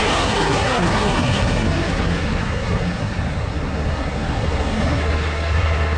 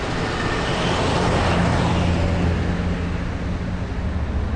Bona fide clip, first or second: second